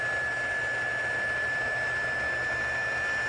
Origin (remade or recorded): recorded